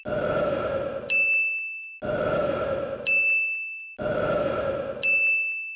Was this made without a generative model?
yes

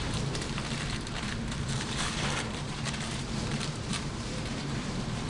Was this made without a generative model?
no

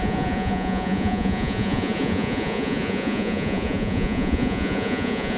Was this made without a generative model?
no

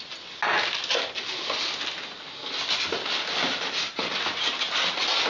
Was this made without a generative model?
yes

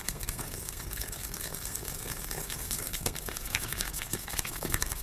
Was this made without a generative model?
no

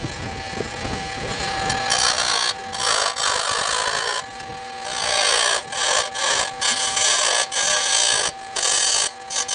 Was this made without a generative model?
yes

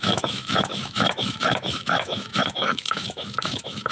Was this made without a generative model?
no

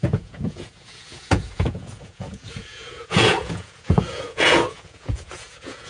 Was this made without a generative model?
no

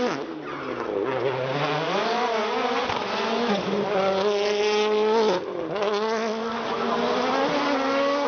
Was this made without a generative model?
yes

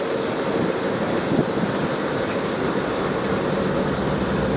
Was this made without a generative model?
yes